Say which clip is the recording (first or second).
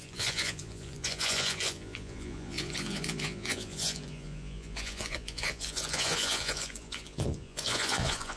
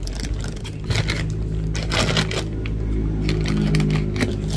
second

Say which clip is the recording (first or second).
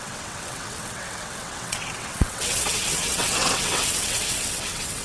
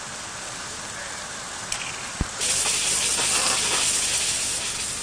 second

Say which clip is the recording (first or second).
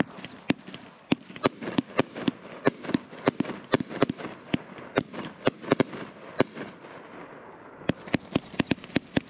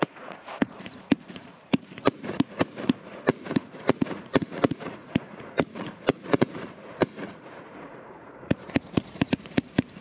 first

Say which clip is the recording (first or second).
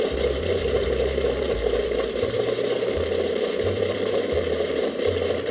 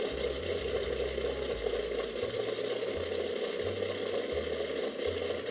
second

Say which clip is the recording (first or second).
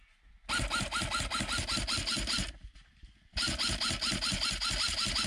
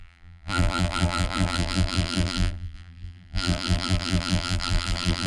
first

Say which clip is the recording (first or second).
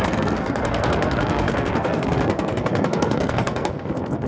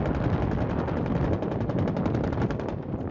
second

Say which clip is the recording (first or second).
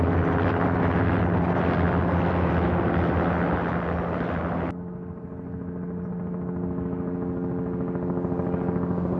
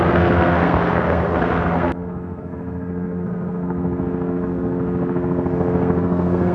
first